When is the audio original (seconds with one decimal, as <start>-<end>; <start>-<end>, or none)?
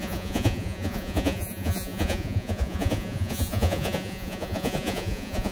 none